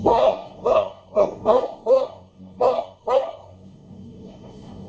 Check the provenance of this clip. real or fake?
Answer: fake